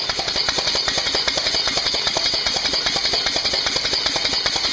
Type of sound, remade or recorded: recorded